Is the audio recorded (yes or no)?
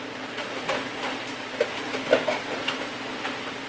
yes